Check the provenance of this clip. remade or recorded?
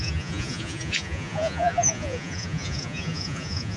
remade